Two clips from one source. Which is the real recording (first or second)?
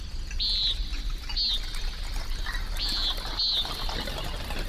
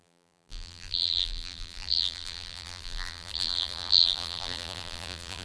first